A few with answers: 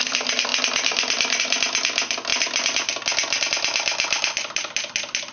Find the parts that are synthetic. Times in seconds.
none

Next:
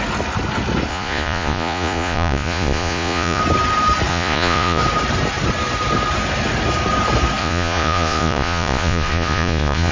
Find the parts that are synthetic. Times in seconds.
0.9-3.4 (vocoder, Vocos); 4.1-4.8; 7.4-9.9